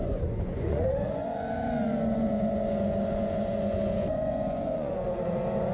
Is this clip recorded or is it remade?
remade